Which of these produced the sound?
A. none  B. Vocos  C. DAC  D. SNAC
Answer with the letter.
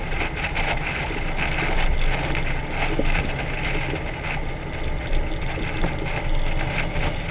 A